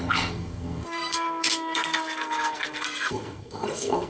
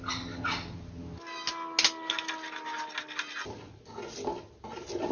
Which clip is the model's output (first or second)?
first